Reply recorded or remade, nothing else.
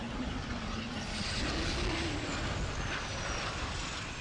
recorded